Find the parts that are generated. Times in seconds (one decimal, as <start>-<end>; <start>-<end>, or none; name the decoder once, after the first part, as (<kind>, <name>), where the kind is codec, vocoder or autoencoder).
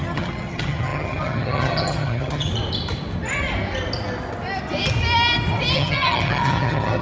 0.0-2.5 (vocoder, HiFi-GAN); 5.7-7.0